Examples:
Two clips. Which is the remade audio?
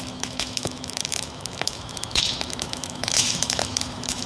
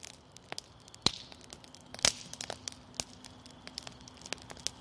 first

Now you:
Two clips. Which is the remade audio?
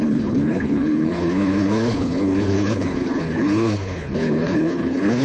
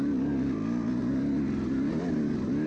first